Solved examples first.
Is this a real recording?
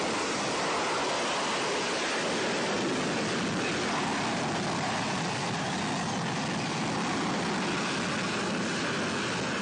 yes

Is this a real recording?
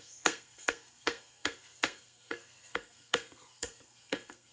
no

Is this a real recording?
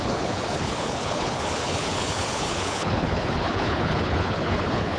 no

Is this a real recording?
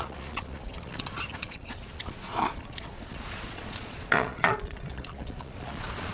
no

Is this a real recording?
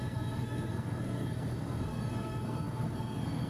no